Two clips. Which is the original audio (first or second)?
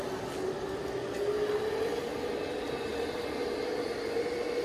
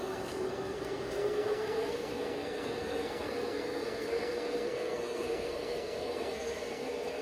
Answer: first